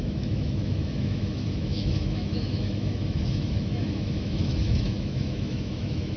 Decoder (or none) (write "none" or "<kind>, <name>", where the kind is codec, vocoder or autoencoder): autoencoder, DAC-VAE